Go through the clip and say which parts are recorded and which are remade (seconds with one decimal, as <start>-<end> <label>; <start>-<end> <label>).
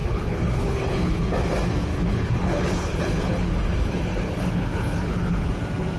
0.0-1.2 remade; 1.2-1.9 recorded; 1.9-5.5 remade; 5.5-6.0 recorded